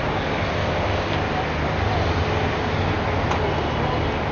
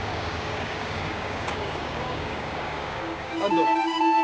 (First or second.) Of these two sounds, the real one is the first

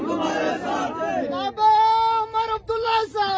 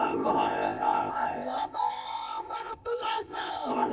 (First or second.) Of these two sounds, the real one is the first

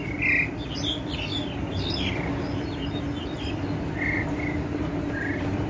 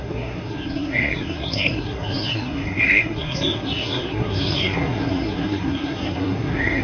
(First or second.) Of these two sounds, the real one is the first